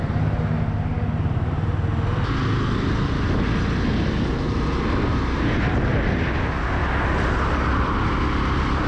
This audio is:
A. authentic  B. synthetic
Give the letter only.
A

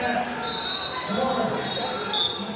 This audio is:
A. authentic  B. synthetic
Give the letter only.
A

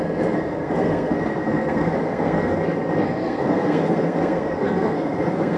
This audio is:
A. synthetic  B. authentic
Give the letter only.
A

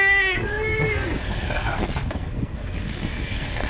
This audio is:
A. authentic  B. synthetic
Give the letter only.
B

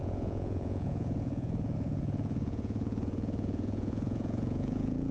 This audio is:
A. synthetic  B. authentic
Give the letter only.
A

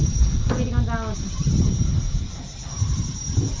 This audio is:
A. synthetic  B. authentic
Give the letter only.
B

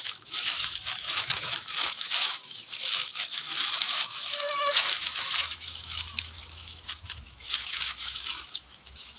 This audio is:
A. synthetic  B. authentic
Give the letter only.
A